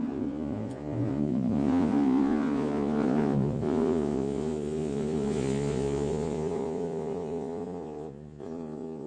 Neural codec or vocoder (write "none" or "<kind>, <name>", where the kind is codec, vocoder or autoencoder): vocoder, Vocos